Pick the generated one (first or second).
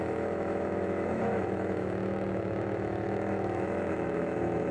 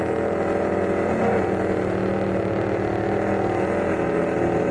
first